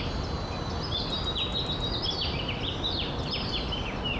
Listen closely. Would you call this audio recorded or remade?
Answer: recorded